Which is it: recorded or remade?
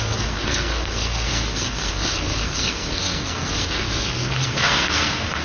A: remade